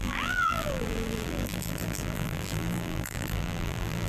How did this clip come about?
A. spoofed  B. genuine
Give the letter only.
A